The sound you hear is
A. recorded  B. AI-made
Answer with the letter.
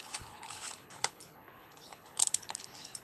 B